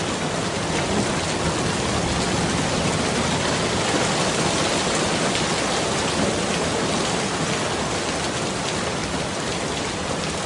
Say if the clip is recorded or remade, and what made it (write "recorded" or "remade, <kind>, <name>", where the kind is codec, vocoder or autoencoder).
recorded